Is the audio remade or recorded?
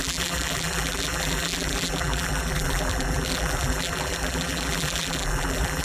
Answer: remade